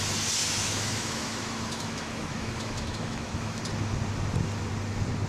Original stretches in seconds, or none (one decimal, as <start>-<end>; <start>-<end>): 0.0-0.4; 3.6-5.3

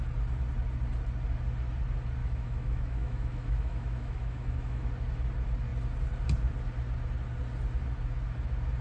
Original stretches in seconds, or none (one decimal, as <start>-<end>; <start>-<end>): 0.0-2.2; 4.9-8.8

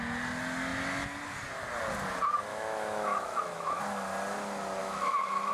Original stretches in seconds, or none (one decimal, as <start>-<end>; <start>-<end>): 0.0-2.5; 3.8-4.8

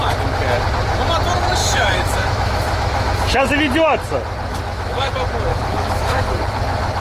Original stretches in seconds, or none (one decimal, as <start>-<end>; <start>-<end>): 0.0-1.6; 3.5-4.5; 5.1-5.5; 6.2-7.0